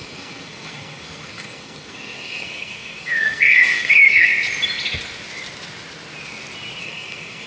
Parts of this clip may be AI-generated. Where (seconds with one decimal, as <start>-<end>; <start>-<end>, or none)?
0.0-4.3; 6.8-7.5